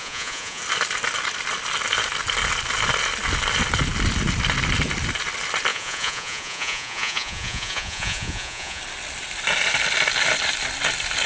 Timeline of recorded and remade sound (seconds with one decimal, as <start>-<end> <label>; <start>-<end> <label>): 0.0-0.6 remade; 0.6-5.7 recorded; 5.7-8.8 remade; 8.8-11.3 recorded